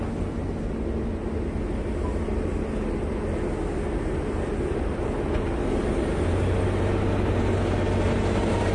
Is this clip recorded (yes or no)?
yes